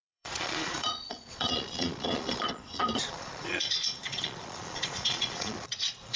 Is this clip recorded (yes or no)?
no